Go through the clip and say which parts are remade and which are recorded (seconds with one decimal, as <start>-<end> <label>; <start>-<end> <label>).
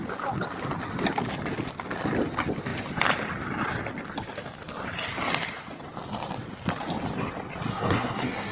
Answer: 0.0-7.7 recorded; 7.7-8.5 remade